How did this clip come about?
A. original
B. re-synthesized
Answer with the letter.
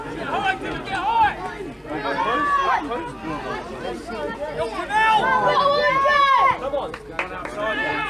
A